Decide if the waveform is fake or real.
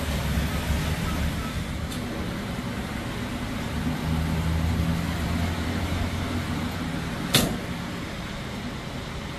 real